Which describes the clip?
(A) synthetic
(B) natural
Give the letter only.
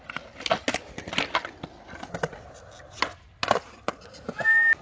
B